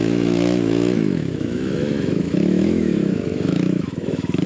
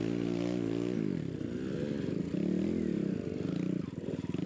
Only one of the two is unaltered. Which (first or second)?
second